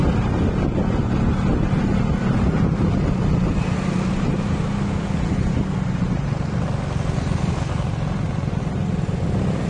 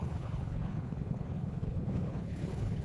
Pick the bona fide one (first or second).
first